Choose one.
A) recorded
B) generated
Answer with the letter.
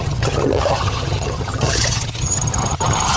B